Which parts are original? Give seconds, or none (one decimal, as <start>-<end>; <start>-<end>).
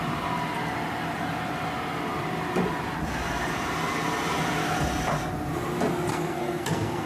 0.0-6.1